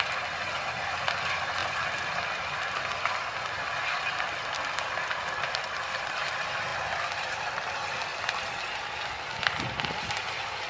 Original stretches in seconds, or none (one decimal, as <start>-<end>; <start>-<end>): 0.0-10.7